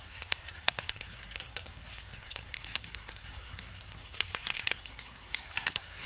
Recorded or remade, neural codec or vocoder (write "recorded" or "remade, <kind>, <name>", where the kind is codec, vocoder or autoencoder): remade, codec, SNAC